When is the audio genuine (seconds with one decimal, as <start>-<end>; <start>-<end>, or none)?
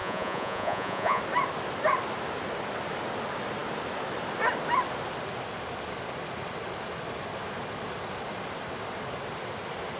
1.2-10.0